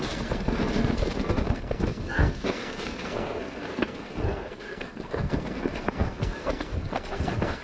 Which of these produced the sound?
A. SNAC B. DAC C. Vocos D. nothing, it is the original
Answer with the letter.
A